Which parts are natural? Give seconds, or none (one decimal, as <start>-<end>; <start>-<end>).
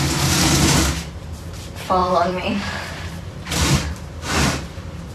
0.0-2.0